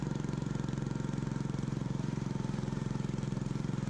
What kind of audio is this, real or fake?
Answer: fake